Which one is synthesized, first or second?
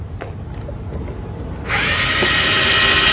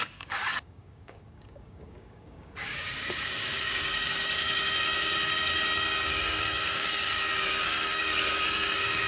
second